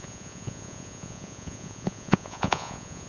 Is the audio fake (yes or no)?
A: yes